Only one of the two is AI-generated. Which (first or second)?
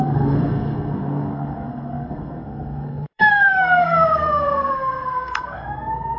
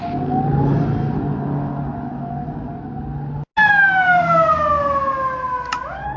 first